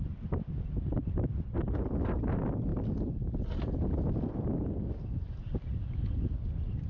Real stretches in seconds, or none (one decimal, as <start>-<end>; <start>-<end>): 0.0-6.9